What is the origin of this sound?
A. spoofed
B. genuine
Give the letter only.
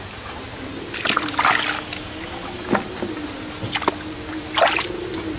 B